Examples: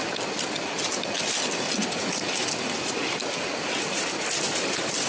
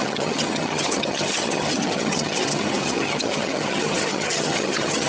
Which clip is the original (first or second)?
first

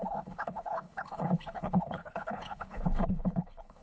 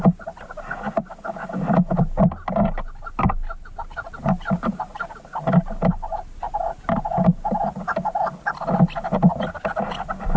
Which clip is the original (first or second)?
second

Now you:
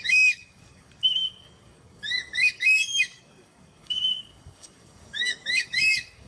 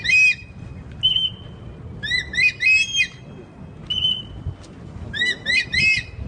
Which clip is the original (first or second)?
second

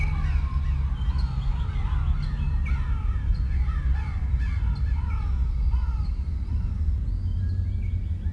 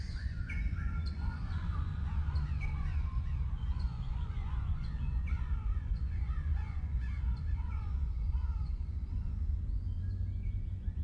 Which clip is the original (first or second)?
first